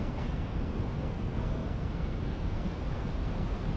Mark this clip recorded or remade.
remade